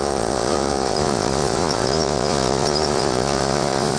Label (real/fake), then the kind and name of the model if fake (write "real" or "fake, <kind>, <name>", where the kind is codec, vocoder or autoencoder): fake, vocoder, Vocos